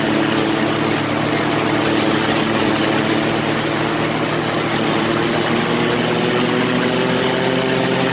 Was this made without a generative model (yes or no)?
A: yes